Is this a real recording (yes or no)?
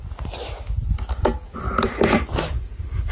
yes